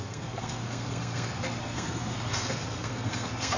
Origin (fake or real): fake